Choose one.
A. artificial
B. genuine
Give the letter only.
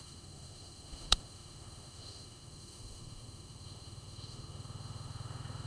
A